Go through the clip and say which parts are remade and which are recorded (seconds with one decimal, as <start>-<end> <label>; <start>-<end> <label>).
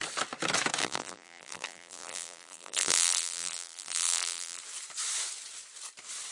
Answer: 0.0-0.8 recorded; 0.8-4.6 remade; 4.6-6.3 recorded